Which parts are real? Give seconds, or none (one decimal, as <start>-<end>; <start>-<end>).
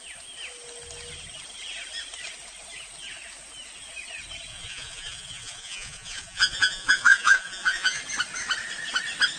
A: 0.0-4.5; 8.0-9.4